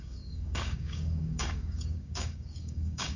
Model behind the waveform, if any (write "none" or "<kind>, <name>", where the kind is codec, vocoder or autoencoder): codec, DAC